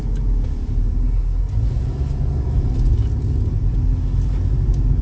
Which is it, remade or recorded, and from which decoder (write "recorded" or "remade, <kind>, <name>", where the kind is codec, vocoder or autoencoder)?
recorded